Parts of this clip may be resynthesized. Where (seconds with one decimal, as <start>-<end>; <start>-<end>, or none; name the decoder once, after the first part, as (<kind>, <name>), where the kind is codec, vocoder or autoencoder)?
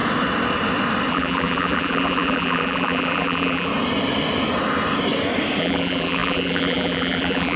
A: 1.1-3.7 (vocoder, BigVGAN v2); 5.6-7.6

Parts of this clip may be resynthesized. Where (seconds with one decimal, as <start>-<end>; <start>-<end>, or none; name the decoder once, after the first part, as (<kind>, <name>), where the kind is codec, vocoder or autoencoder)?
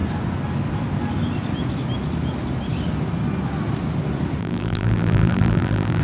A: 4.4-6.0 (vocoder, BigVGAN v2)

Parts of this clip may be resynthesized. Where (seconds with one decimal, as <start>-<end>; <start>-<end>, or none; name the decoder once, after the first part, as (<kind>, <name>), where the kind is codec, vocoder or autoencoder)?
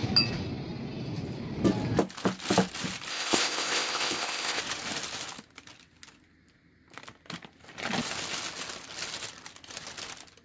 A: 3.1-4.6 (codec, ZipCodec)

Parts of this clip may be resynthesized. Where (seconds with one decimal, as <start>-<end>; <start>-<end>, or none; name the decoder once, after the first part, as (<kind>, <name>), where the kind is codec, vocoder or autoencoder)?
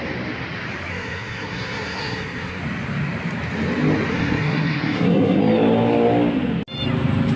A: 0.9-2.6 (codec, SNAC); 4.1-5.4